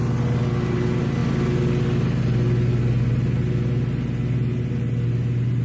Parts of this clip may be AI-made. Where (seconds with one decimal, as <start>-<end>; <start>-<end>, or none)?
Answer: none